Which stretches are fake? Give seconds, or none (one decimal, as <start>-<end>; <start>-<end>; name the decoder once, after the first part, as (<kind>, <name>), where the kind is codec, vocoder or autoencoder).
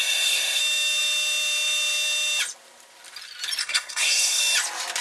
0.0-0.6 (codec, SNAC); 3.6-4.4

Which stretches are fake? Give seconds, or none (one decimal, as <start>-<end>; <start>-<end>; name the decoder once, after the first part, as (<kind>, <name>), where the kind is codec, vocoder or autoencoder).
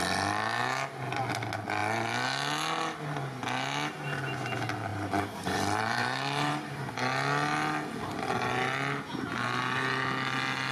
4.9-6.8 (vocoder, BigVGAN v2)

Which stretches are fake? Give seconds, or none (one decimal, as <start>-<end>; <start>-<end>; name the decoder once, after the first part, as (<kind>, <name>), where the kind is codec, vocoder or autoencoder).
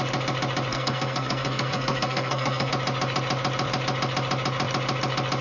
0.7-2.7 (codec, SNAC)